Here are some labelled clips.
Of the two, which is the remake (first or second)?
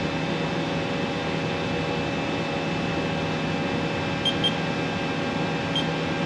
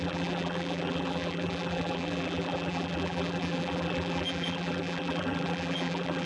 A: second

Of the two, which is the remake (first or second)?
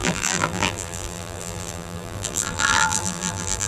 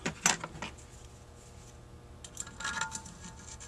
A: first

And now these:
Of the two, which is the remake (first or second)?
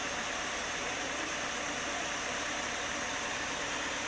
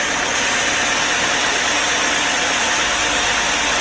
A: first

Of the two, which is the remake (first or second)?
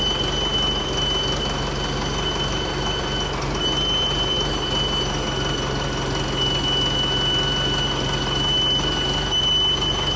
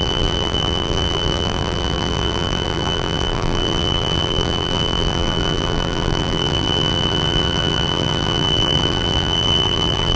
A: second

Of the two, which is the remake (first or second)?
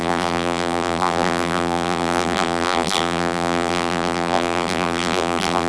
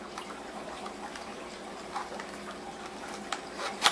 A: first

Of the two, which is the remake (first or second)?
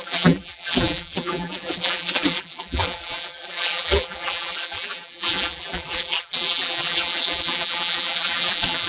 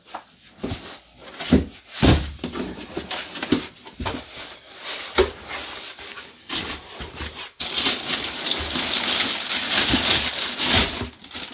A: first